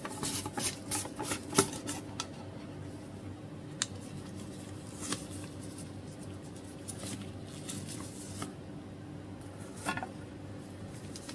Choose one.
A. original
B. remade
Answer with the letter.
A